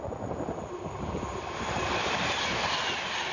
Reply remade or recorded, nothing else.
recorded